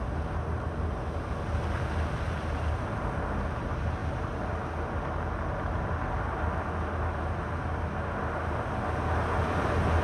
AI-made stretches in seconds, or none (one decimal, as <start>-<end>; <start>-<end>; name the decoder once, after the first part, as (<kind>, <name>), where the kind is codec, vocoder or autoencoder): none